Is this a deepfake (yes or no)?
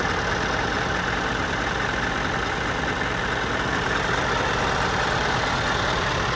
no